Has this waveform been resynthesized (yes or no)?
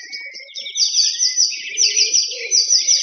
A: no